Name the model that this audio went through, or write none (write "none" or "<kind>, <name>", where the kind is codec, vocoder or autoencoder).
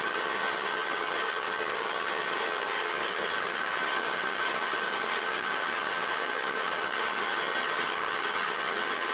vocoder, HiFi-GAN